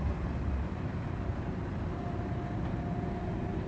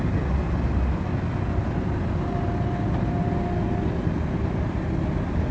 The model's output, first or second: first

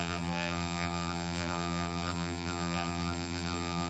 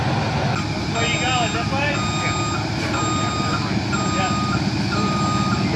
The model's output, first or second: first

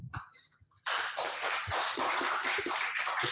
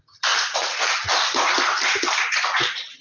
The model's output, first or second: first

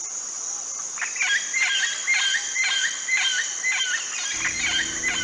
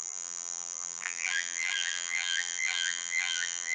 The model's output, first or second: second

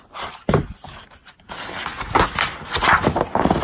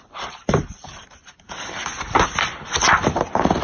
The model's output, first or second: second